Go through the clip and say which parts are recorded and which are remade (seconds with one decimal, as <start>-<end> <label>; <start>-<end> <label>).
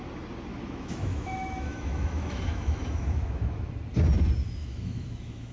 0.0-0.5 recorded; 0.5-3.7 remade; 3.7-4.6 recorded; 4.6-5.5 remade